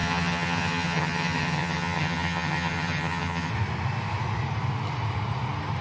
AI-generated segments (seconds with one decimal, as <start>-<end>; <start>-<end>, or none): 0.0-3.5